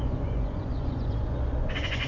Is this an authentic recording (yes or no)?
no